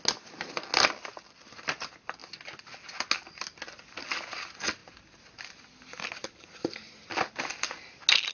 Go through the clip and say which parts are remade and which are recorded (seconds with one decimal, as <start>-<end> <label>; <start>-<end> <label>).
0.0-8.3 recorded